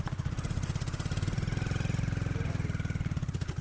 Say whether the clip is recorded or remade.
recorded